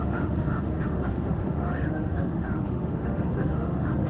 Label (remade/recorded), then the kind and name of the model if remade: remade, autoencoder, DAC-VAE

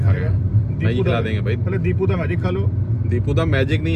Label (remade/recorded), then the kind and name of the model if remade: recorded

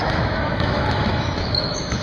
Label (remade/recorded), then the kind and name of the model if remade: remade, autoencoder, DAC-VAE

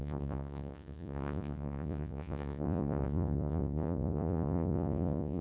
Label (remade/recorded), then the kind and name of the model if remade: remade, vocoder, Vocos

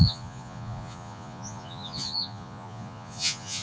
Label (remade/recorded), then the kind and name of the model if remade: remade, vocoder, Vocos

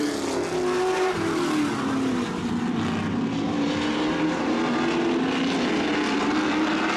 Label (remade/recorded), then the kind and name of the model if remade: recorded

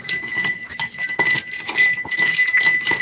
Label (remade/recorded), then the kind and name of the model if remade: recorded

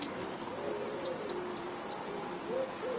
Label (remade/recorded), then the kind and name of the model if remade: recorded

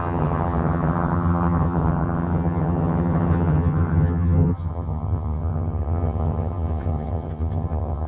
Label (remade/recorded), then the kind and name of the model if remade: remade, vocoder, HiFi-GAN